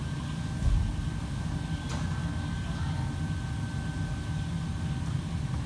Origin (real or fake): real